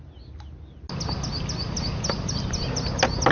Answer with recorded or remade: recorded